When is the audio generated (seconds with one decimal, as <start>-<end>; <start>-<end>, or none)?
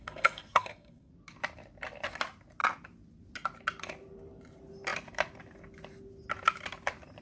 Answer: 0.0-1.1